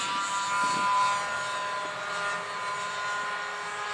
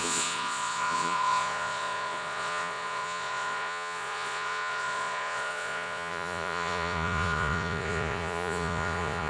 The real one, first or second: first